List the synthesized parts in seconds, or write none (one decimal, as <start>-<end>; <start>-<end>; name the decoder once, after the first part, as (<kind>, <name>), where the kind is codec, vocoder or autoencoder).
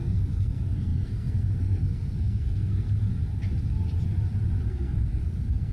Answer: 0.0-3.1 (codec, SNAC); 4.7-5.7